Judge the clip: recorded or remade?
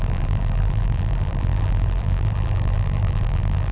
remade